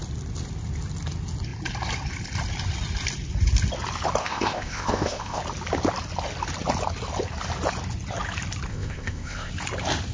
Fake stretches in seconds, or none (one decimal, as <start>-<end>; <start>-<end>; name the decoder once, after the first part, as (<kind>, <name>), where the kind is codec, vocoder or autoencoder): 4.2-5.4 (codec, ZipCodec); 8.7-9.5

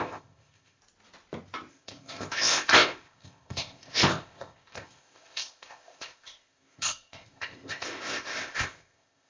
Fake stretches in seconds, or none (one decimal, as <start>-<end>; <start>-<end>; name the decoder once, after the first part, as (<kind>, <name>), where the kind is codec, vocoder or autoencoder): 0.0-0.8 (codec, ZipCodec); 1.7-9.3

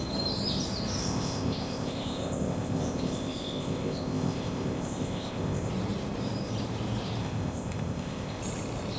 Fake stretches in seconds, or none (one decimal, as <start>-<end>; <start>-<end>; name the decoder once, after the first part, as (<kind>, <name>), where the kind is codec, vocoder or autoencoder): 1.0-5.7 (codec, ZipCodec); 7.2-8.4